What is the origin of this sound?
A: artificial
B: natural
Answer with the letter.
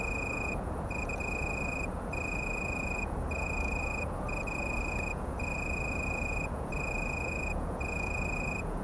A